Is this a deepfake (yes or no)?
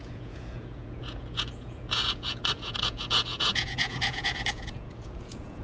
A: yes